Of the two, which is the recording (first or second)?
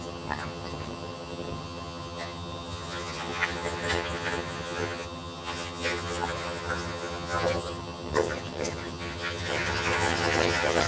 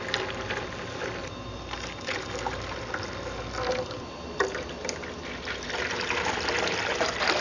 second